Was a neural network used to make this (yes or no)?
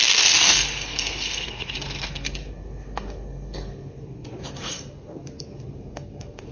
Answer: yes